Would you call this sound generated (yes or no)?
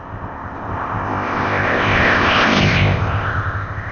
yes